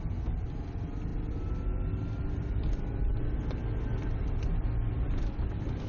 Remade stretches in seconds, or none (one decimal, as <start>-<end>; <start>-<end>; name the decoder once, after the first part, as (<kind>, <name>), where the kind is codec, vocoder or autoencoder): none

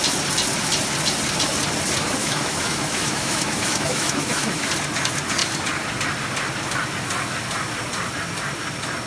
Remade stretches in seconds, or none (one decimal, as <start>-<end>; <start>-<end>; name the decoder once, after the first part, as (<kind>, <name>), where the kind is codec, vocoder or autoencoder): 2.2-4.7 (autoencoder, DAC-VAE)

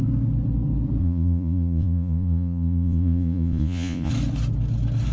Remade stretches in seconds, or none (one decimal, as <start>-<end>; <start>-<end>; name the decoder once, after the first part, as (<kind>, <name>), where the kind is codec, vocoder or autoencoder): 1.0-4.1 (vocoder, Vocos)

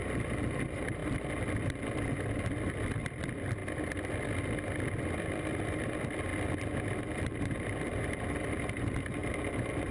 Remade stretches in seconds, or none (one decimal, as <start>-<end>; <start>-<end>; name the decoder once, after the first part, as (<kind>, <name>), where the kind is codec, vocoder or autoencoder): 0.0-1.0 (vocoder, BigVGAN v2); 2.7-3.6; 5.2-6.3; 7.0-9.9

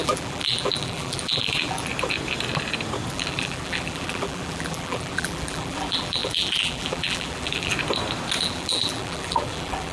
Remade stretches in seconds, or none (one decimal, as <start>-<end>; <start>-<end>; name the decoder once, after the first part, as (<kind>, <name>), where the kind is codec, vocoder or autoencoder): 0.0-1.9 (vocoder, BigVGAN v2); 3.1-7.7; 8.4-9.9

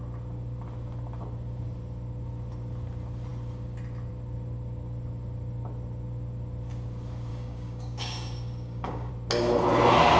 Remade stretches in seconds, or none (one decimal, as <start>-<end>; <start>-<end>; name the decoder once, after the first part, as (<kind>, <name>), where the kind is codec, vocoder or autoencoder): 7.3-9.1 (codec, DAC)

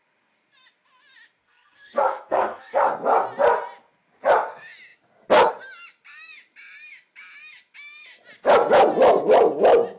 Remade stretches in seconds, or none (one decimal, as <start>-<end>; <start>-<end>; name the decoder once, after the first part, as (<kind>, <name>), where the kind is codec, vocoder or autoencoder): 1.4-2.9 (codec, SNAC)